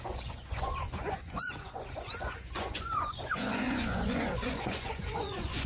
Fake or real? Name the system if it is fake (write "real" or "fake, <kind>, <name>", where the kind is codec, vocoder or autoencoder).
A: fake, vocoder, Vocos